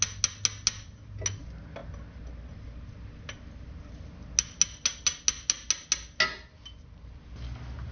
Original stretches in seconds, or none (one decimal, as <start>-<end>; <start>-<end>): 0.0-7.9